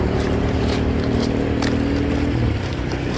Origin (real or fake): real